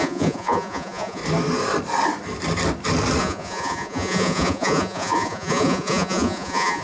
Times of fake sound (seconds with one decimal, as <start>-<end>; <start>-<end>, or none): 0.0-1.2; 3.2-6.8